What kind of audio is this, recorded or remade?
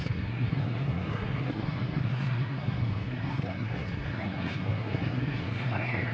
remade